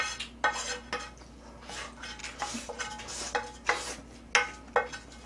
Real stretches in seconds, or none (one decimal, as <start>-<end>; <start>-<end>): 0.0-5.3